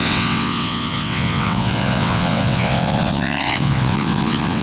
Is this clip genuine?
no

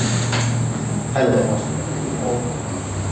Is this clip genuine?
yes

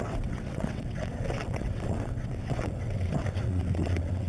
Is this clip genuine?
no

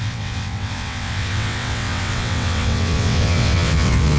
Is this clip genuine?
no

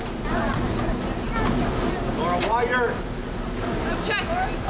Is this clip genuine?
yes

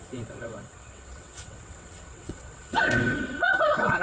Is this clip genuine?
no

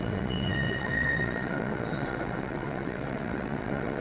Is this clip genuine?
no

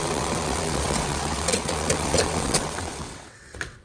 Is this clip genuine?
no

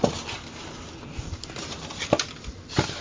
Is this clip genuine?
yes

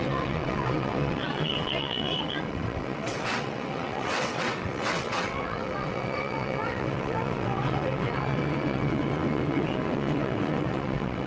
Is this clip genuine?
no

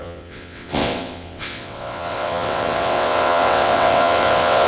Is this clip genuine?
no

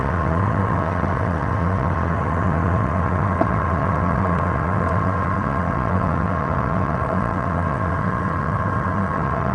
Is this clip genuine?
no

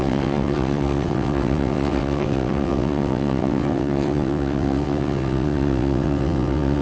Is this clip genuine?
no